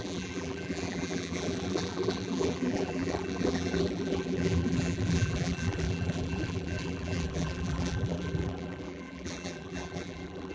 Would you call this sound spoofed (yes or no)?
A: yes